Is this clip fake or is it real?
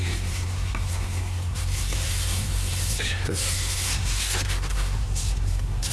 fake